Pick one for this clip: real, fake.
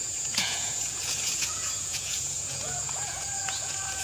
fake